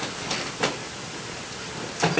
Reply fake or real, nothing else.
real